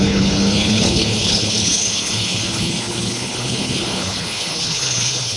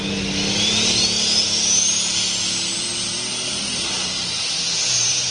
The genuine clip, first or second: second